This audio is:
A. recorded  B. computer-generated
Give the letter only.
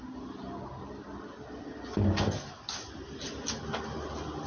A